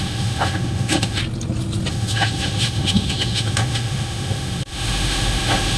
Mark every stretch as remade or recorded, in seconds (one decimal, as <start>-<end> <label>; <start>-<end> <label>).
0.0-1.2 remade; 1.2-1.9 recorded; 1.9-5.8 remade